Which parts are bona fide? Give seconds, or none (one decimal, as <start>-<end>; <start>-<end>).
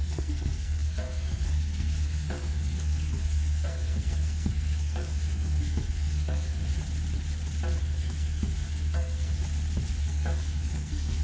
6.6-7.8; 9.3-10.0